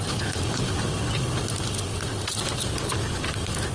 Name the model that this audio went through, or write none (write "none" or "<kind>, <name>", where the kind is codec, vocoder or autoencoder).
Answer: none